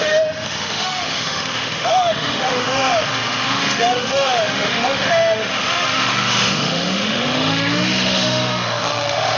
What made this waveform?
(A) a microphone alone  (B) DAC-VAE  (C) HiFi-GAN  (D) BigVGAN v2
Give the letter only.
B